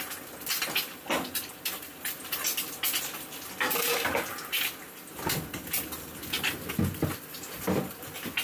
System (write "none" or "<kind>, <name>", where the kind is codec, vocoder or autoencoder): none